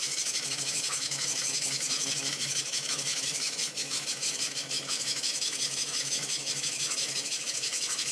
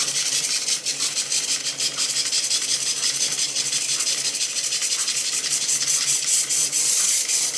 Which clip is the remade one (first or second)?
first